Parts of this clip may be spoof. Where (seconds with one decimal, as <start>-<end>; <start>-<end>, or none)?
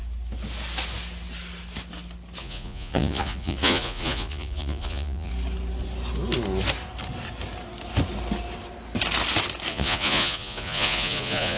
2.4-5.3; 9.7-11.6